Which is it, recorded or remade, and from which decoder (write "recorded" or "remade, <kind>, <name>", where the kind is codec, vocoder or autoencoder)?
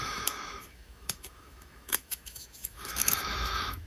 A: remade, autoencoder, DAC-VAE